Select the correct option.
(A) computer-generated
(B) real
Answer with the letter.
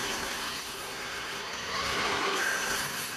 A